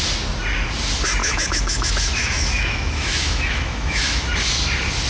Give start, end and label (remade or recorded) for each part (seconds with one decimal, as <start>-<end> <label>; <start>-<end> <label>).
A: 0.0-1.2 recorded; 1.2-4.3 remade; 4.3-5.1 recorded